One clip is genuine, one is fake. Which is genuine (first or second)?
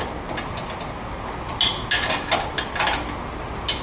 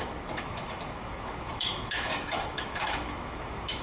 first